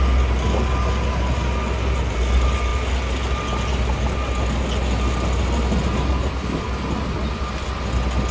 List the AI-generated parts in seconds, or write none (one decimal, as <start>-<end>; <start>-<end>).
none